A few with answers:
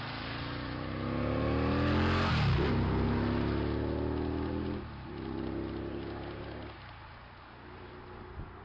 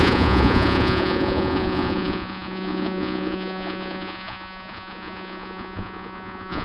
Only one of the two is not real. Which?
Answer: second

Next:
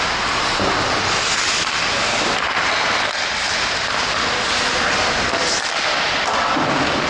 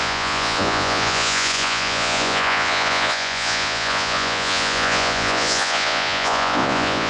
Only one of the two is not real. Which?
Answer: second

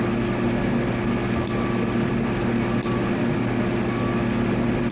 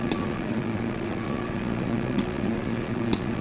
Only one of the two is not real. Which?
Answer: second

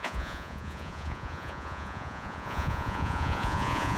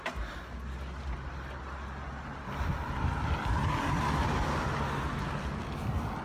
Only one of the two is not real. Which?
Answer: first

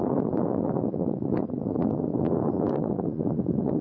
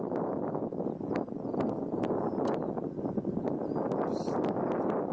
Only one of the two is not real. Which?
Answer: first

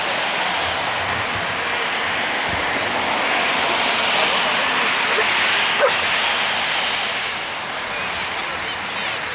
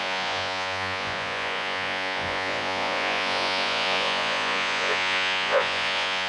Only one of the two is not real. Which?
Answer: second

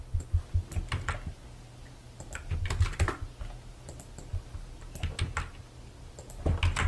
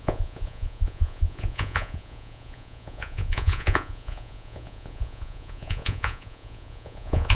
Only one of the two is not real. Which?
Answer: second